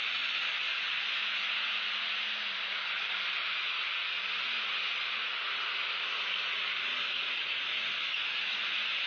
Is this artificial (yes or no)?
no